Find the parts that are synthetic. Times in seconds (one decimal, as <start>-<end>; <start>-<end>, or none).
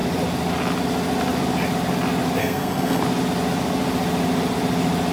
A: 2.4-3.0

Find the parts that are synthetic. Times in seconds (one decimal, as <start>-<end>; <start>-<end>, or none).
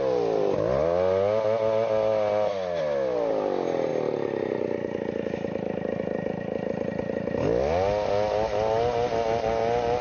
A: none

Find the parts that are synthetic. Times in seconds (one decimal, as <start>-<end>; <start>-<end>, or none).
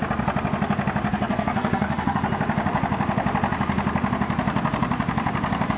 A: 1.1-2.2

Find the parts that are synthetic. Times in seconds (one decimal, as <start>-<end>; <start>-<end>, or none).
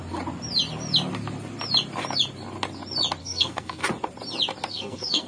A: 3.2-3.8; 4.7-5.3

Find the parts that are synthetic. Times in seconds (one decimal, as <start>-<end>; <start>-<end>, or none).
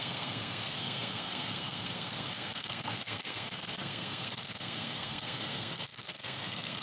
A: 0.0-6.8